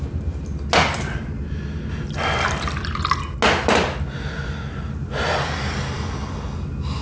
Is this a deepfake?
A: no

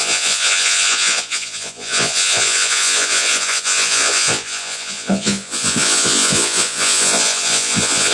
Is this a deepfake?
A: yes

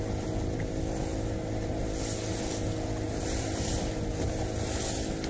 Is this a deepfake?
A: no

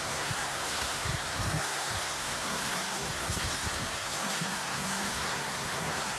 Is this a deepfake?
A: yes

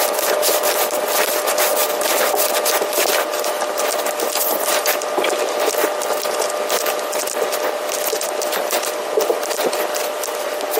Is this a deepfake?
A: no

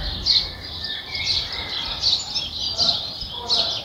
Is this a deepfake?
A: no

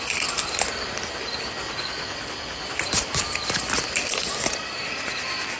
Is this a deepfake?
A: no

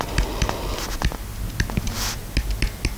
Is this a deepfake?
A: no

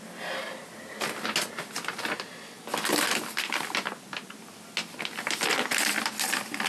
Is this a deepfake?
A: no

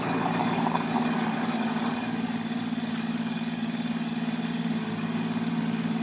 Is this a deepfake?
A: yes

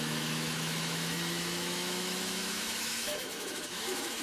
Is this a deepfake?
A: yes